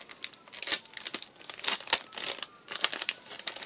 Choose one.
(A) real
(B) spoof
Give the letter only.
A